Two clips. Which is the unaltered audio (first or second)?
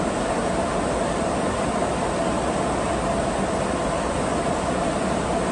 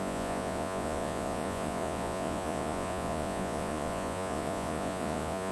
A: first